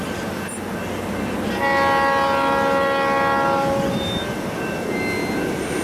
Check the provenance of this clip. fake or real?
real